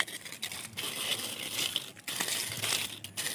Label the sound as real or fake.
real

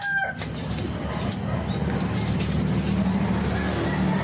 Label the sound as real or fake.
real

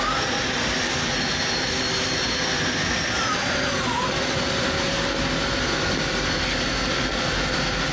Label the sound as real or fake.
real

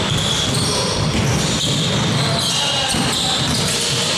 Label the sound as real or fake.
real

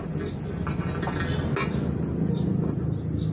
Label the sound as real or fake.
real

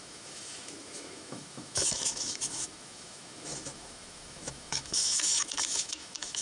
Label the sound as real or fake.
fake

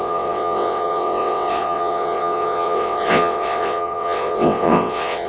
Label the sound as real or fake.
fake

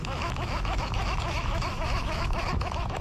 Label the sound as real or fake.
fake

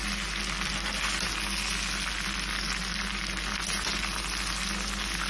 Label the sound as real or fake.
real